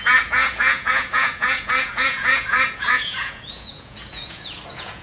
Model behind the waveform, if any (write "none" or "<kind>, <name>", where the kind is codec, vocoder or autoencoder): vocoder, Vocos